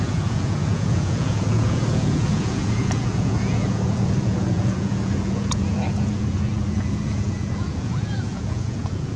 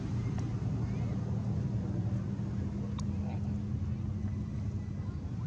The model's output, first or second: first